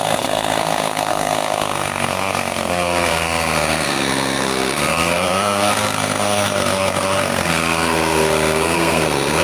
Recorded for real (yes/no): no